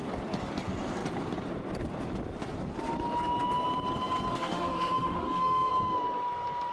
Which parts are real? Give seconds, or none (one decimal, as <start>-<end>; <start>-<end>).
0.0-4.3; 5.7-6.7